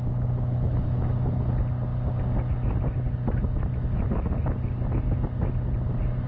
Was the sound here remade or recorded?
recorded